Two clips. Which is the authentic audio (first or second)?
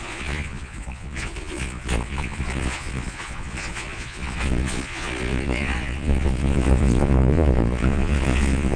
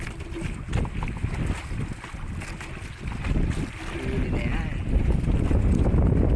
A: second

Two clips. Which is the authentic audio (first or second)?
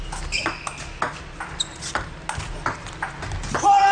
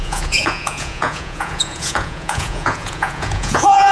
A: first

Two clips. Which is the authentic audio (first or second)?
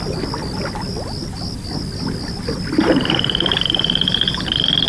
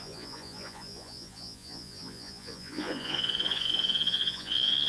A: first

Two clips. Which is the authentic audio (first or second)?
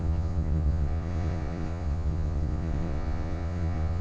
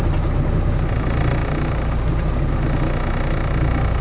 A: second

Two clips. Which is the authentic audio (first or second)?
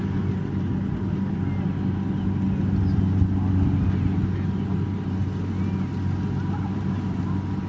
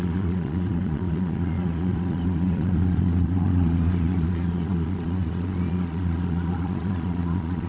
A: first